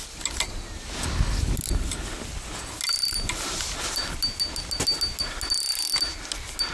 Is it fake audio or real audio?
real